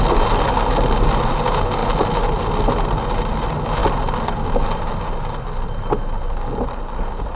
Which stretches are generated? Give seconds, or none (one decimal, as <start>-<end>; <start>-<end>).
none